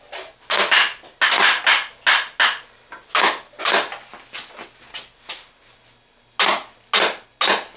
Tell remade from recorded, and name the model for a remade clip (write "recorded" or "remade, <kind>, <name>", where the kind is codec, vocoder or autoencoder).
recorded